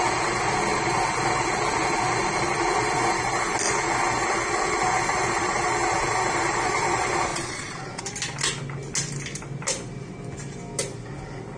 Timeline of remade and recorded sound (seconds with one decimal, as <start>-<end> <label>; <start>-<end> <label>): 0.0-7.3 recorded; 7.3-8.0 remade; 8.0-11.6 recorded